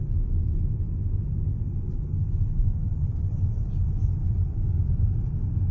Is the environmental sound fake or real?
real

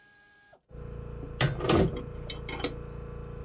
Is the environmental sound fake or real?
real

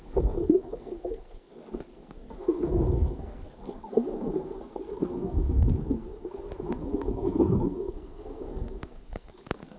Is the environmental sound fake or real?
fake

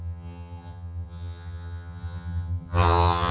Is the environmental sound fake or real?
fake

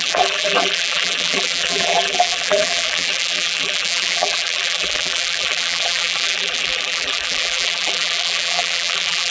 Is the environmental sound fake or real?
fake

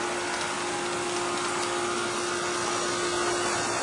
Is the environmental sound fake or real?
real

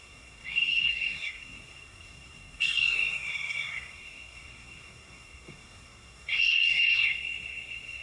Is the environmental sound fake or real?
fake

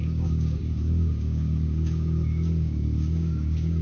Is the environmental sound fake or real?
fake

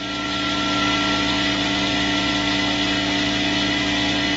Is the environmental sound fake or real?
real